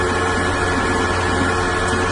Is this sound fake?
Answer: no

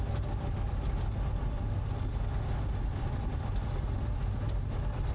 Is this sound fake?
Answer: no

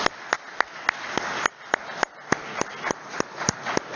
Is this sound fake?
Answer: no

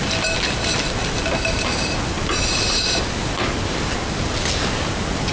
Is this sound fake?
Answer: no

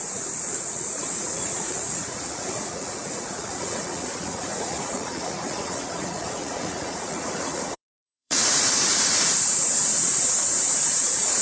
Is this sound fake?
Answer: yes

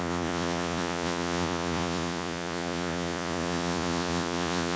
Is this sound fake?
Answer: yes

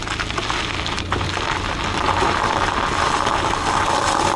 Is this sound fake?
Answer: no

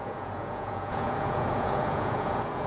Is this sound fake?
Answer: yes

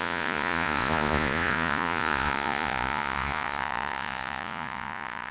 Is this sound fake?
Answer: yes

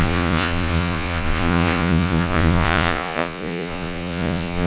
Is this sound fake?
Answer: yes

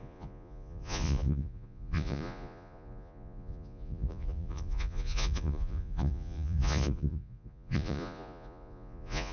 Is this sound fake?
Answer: yes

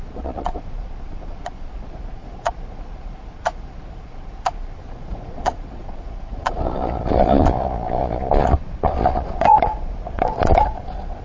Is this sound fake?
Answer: yes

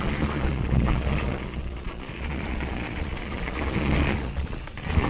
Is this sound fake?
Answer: yes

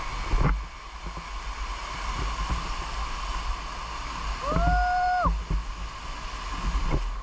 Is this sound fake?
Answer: no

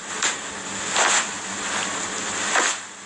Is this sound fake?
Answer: no